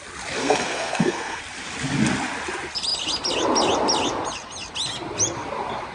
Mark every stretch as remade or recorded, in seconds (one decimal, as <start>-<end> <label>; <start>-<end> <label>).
0.0-0.4 recorded; 0.4-1.4 remade; 1.4-5.9 recorded